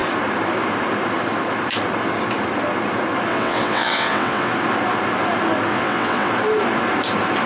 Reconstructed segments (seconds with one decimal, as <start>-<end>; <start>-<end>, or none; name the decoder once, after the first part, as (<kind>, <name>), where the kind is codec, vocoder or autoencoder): 3.3-4.5 (vocoder, WaveNeXt); 5.7-6.3